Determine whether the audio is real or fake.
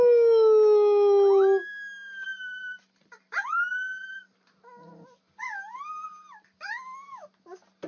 real